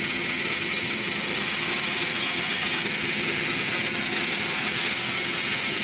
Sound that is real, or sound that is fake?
fake